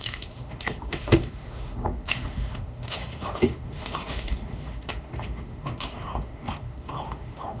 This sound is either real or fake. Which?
fake